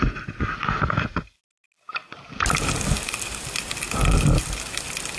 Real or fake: real